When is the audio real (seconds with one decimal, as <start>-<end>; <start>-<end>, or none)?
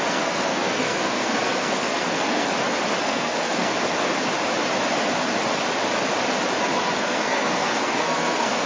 2.5-3.0; 3.7-7.0